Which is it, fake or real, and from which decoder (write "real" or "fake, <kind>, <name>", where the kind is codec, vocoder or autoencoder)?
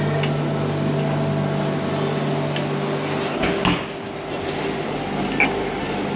real